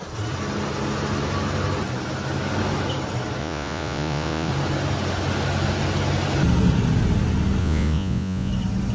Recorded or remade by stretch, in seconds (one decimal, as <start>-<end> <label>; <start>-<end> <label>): 0.0-3.4 recorded; 3.4-4.5 remade; 4.5-7.6 recorded; 7.6-8.5 remade; 8.5-8.9 recorded